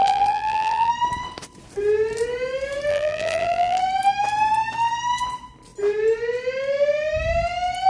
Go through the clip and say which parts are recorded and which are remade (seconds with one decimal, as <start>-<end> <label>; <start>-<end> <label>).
0.0-0.9 remade; 0.9-2.9 recorded; 2.9-3.8 remade; 3.8-7.9 recorded